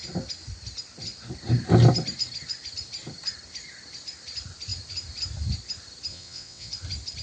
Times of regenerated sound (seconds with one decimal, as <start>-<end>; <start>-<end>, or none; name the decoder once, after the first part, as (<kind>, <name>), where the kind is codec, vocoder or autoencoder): 6.1-6.7 (vocoder, WaveNeXt)